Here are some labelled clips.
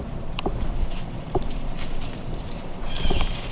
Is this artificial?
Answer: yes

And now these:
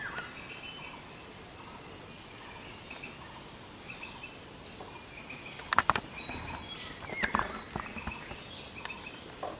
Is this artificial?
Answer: no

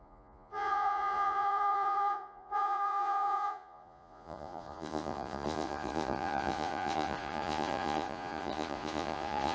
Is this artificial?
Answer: yes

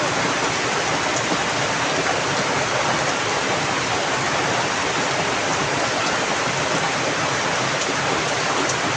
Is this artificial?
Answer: no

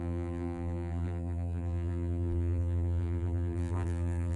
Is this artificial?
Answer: yes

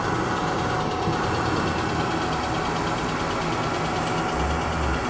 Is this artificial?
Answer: no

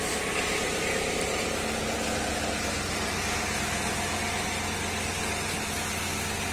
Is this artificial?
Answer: no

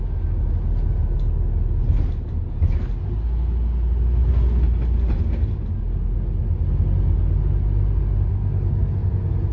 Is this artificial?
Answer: no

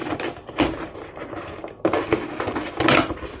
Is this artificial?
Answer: no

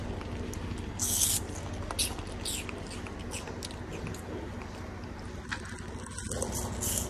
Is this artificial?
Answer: no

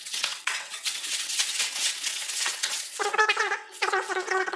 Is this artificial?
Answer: yes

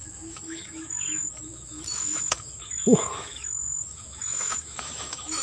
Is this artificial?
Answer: yes